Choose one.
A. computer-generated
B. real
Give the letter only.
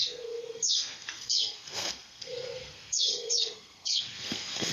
A